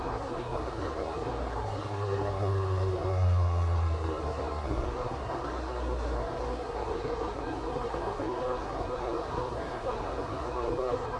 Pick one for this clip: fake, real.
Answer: fake